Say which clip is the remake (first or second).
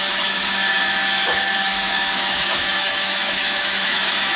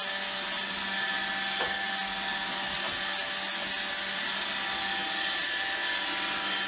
first